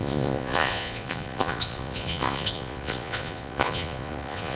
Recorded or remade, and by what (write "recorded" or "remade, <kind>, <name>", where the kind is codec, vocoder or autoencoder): remade, vocoder, Vocos